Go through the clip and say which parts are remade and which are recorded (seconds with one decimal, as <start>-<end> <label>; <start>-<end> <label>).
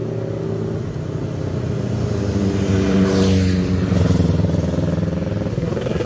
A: 0.0-5.5 recorded; 5.5-6.1 remade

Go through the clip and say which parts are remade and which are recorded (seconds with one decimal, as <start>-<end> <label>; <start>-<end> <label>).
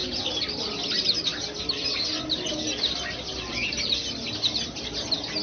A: 0.0-5.4 recorded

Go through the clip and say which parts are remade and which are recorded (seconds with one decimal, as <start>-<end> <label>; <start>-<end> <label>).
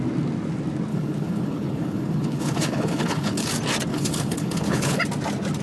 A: 0.0-0.9 recorded; 0.9-3.5 remade; 3.5-3.9 recorded; 3.9-5.0 remade; 5.0-5.6 recorded